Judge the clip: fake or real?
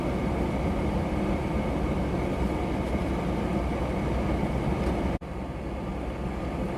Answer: real